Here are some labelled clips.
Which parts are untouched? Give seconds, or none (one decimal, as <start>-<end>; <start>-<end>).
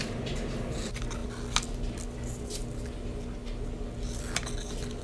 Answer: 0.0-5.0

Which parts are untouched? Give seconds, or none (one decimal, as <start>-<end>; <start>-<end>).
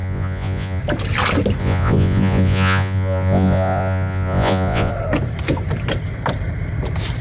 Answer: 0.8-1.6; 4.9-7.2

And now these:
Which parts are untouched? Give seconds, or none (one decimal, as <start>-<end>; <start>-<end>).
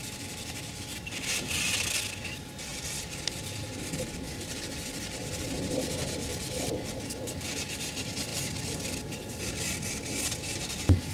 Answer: 1.1-2.7; 7.0-11.1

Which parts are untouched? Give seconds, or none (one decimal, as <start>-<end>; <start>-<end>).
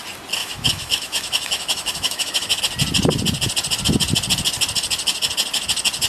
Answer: 0.0-0.4; 2.6-6.1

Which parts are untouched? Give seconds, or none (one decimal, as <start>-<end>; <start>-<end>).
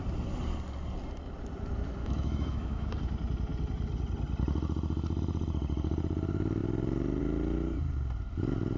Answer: 0.0-2.0; 2.9-8.8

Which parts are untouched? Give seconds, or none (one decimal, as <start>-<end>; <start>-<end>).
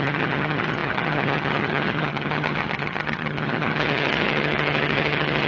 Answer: none